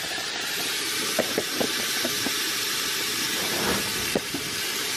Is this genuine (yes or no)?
no